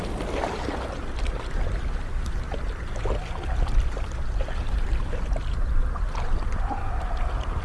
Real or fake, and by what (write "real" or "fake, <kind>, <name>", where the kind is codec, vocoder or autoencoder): real